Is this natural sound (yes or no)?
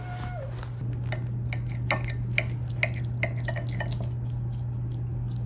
yes